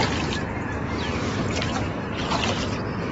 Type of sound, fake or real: real